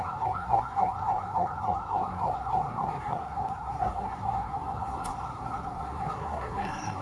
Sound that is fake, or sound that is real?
fake